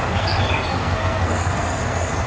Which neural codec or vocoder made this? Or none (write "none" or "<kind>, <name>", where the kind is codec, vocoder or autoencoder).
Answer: codec, SNAC